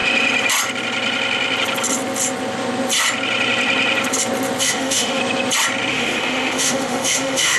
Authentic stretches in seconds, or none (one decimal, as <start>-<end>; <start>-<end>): 0.0-4.6; 5.2-5.9